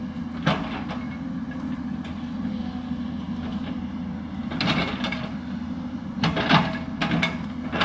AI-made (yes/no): no